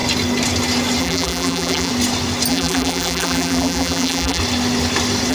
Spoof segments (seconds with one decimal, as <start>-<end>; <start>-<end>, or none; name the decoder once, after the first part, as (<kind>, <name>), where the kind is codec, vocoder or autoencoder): 1.0-1.9 (vocoder, BigVGAN v2); 2.5-4.4